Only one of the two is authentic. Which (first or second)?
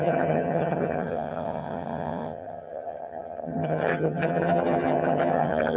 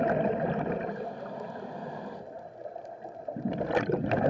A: second